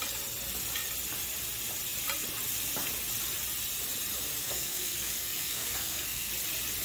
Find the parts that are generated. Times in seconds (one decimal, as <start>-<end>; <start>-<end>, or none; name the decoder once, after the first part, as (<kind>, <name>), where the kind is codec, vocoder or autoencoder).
4.4-6.3 (codec, SNAC)